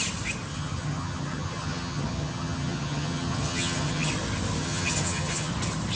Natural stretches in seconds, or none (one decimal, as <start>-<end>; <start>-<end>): 0.0-0.5; 4.1-4.6; 5.5-6.0

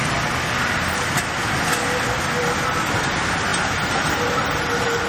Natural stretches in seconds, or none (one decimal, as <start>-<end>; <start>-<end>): 0.0-5.1